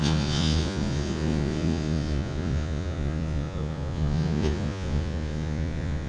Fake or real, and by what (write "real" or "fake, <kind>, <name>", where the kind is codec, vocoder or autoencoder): fake, vocoder, Vocos